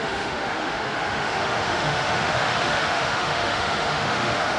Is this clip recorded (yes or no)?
no